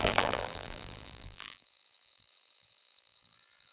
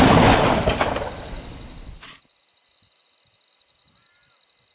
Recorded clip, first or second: second